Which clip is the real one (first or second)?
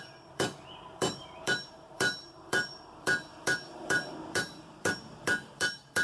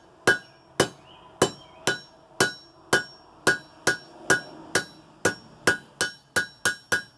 second